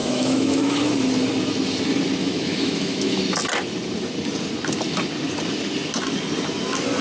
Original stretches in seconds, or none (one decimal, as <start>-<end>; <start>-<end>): 0.8-2.2; 3.2-7.0